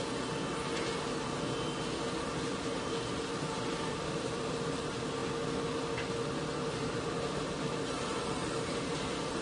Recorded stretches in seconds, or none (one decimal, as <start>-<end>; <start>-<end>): 0.0-3.1; 5.2-6.7